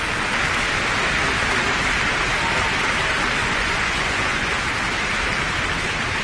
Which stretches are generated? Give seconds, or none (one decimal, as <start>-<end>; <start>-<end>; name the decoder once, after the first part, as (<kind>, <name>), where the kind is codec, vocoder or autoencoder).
3.4-4.5 (vocoder, Vocos)